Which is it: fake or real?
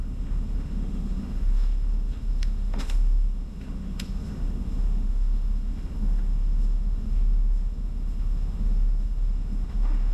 fake